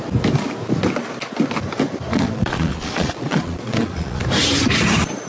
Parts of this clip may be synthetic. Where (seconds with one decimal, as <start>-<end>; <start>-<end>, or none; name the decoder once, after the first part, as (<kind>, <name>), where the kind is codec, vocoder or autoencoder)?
2.1-4.2 (vocoder, Vocos)